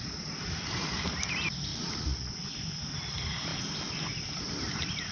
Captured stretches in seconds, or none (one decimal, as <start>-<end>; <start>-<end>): 0.0-1.7; 2.3-5.1